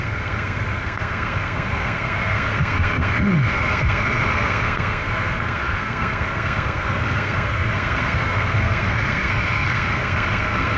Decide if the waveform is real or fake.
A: fake